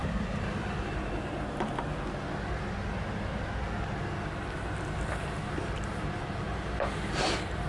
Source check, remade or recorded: recorded